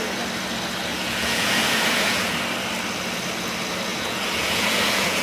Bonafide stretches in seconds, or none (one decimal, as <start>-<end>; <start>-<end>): 0.0-0.9; 2.3-3.9